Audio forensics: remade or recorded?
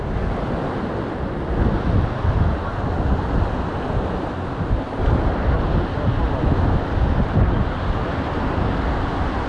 recorded